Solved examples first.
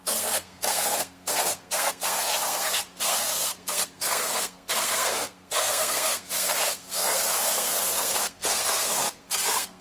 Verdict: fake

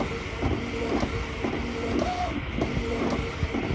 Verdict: real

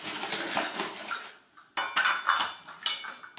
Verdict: real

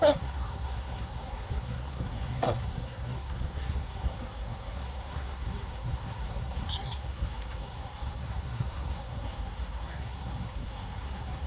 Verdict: fake